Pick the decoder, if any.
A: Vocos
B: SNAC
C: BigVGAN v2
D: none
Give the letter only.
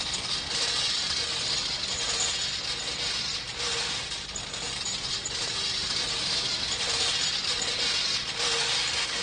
D